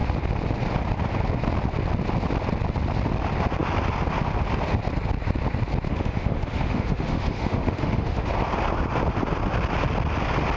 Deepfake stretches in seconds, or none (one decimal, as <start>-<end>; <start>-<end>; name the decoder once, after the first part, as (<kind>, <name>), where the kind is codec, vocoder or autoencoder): 5.9-8.3 (autoencoder, DAC-VAE)

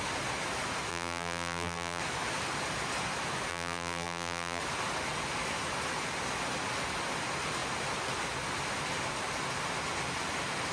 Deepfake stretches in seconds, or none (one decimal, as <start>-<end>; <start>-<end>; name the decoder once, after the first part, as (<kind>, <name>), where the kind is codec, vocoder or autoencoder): 0.9-2.0 (vocoder, BigVGAN v2); 3.5-4.6